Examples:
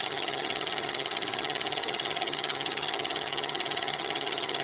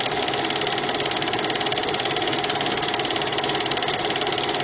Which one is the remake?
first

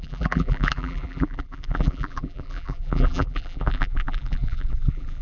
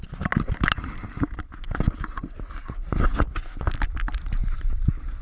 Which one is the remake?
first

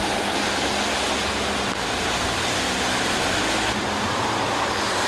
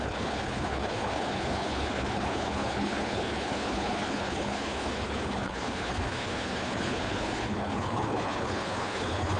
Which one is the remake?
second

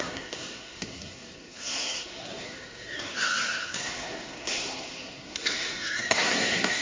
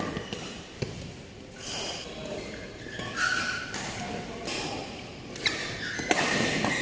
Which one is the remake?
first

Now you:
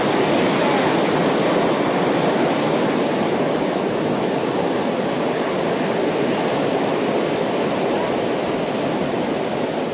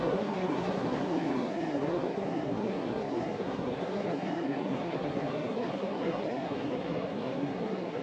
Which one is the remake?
second